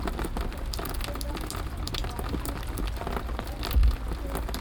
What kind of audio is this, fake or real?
real